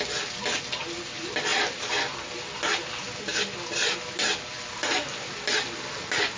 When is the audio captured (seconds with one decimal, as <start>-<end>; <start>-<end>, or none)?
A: 0.0-6.4